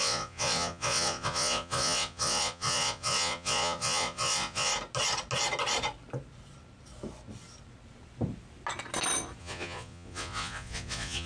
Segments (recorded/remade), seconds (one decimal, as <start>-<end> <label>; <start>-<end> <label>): 0.0-4.7 remade; 4.7-9.4 recorded; 9.4-11.3 remade

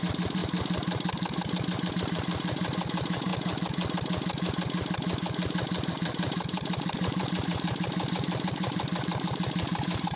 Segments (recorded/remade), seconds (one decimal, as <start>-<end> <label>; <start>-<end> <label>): 0.0-0.4 remade; 0.4-1.9 recorded; 1.9-3.3 remade; 3.3-5.9 recorded; 5.9-10.2 remade

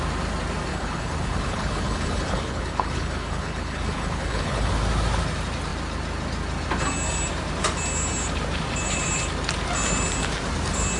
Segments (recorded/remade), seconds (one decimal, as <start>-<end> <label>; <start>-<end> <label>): 0.0-0.7 recorded; 0.7-4.7 remade; 4.7-11.0 recorded

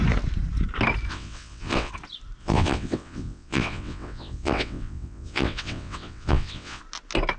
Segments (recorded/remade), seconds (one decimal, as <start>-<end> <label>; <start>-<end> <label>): 0.0-1.1 recorded; 1.1-1.9 remade; 1.9-2.4 recorded; 2.4-6.8 remade; 6.8-7.4 recorded

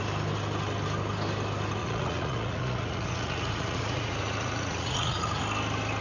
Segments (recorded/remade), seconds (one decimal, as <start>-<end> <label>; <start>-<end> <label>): 0.0-1.8 recorded; 1.8-5.4 remade; 5.4-6.0 recorded

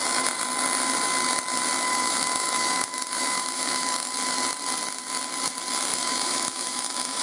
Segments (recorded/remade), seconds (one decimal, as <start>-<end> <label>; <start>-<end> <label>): 0.0-1.9 recorded; 1.9-4.1 remade; 4.1-5.9 recorded; 5.9-7.2 remade

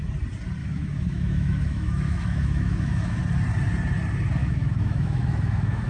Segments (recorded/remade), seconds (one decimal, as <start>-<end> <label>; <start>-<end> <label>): 0.0-0.6 recorded; 0.6-3.2 remade; 3.2-4.4 recorded; 4.4-5.9 remade

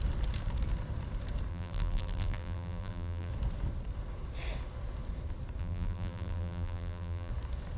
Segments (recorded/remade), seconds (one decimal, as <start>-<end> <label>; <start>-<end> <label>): 0.0-1.5 recorded; 1.5-3.3 remade; 3.3-5.6 recorded; 5.6-7.3 remade; 7.3-7.8 recorded